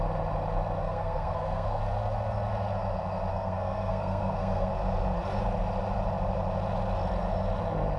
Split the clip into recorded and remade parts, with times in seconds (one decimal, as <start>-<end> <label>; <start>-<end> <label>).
0.0-0.8 recorded; 0.8-1.8 remade; 1.8-3.3 recorded; 3.3-4.7 remade; 4.7-8.0 recorded